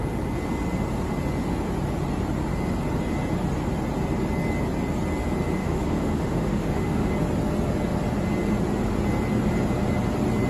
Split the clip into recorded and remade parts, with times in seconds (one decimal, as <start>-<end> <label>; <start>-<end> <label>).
0.0-5.6 recorded; 5.6-7.1 remade; 7.1-10.5 recorded